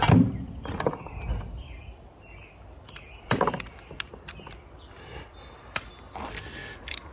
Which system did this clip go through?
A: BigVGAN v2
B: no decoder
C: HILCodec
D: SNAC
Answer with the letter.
B